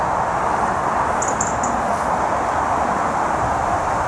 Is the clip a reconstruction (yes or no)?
no